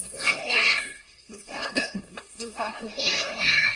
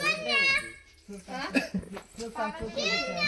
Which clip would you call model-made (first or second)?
first